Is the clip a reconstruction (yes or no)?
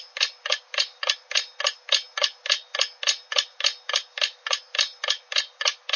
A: no